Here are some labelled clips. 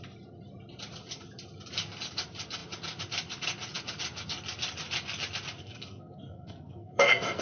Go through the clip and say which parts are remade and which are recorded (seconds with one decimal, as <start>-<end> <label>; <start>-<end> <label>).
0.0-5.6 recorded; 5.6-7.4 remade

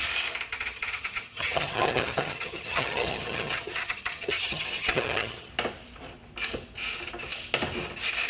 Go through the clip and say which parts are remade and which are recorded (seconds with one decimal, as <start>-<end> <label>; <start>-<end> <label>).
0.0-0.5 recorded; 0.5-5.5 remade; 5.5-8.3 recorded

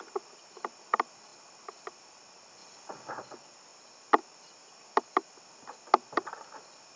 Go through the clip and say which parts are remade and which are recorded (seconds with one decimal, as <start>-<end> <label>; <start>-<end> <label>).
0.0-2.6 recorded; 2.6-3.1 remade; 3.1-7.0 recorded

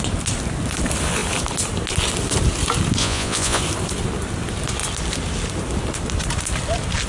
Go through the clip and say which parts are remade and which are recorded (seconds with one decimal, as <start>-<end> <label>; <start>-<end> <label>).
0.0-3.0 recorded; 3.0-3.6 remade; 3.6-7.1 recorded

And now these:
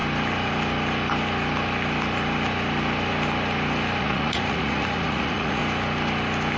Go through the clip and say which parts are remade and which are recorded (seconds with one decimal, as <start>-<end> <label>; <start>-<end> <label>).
0.0-4.0 recorded; 4.0-5.6 remade; 5.6-6.6 recorded